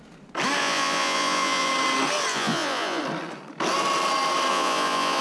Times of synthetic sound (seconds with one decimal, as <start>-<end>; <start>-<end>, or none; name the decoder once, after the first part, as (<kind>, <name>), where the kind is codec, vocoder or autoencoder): 0.6-1.7 (vocoder, Vocos); 2.3-3.0; 4.5-5.2